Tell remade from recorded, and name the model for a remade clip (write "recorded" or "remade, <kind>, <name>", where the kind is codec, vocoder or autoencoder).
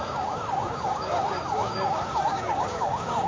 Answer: remade, codec, DAC